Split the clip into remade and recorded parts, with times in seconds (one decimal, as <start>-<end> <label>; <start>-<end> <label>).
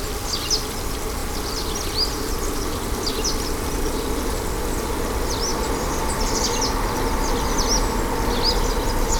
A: 0.0-9.2 recorded